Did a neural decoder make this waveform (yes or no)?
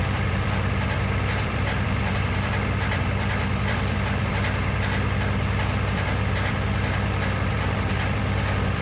yes